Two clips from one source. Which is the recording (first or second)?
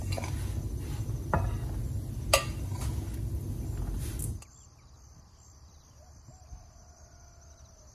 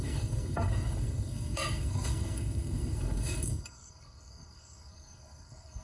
first